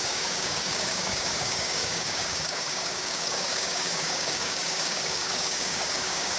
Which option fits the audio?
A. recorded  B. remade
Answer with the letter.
B